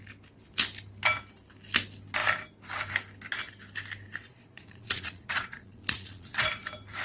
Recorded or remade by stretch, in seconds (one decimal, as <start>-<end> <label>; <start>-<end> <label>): 0.0-4.2 recorded; 4.2-6.5 remade; 6.5-7.0 recorded